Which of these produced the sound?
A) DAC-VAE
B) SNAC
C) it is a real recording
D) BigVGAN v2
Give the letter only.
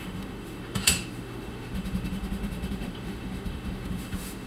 A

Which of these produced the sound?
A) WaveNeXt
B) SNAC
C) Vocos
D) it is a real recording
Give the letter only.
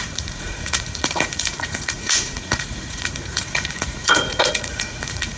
C